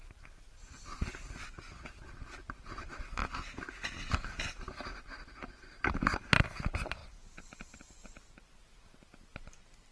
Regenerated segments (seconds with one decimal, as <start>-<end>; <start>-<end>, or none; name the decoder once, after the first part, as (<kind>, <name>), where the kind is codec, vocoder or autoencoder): 2.4-3.2 (vocoder, BigVGAN v2); 6.6-9.9